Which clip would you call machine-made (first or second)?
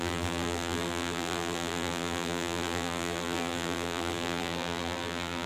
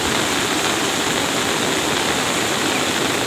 first